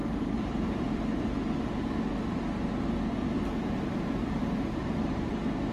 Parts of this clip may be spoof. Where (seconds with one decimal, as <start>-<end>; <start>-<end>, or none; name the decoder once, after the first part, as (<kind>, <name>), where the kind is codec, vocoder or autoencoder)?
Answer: 0.0-1.0 (vocoder, BigVGAN v2); 3.2-5.3